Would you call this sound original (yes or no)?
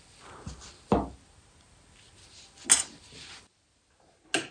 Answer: yes